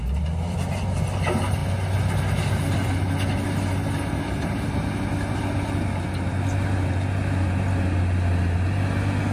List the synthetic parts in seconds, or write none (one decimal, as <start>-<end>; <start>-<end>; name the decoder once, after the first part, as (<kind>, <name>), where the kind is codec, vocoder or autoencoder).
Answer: none